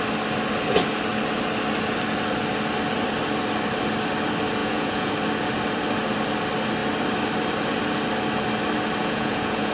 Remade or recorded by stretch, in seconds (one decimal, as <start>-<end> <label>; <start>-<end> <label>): 0.0-4.6 recorded; 4.6-5.1 remade; 5.1-9.0 recorded; 9.0-9.7 remade